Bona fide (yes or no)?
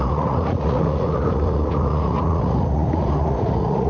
no